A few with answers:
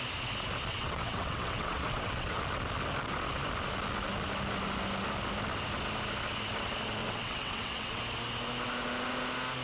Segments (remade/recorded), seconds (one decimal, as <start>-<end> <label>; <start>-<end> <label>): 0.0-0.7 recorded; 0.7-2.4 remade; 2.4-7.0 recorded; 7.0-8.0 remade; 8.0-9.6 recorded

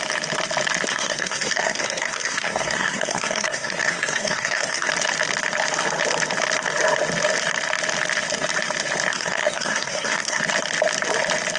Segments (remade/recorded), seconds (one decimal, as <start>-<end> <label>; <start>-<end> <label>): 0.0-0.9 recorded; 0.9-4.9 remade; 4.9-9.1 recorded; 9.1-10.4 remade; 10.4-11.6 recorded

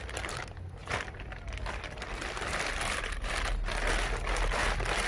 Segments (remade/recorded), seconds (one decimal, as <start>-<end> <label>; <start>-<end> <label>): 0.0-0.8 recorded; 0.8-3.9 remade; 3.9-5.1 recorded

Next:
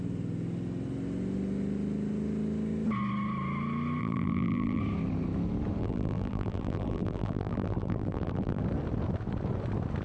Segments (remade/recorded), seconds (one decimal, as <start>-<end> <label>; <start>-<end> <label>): 0.0-4.0 recorded; 4.0-4.8 remade; 4.8-5.8 recorded; 5.8-8.6 remade; 8.6-10.0 recorded